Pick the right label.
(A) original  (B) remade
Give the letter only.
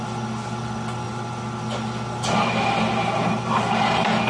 A